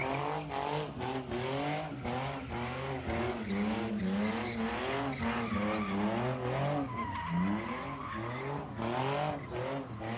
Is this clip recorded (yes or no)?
yes